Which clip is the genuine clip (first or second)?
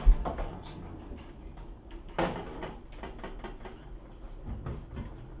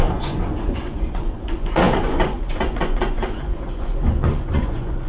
first